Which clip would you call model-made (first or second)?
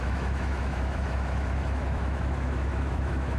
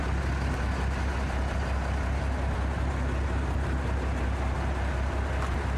first